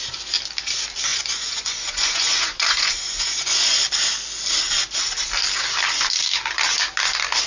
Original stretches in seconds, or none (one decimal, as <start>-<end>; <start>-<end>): 0.0-1.1; 3.8-7.5